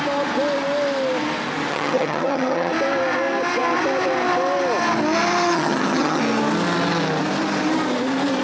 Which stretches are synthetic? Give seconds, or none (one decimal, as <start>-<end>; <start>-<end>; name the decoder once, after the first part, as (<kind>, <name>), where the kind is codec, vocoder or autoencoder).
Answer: 1.7-2.7 (vocoder, HiFi-GAN); 5.5-6.2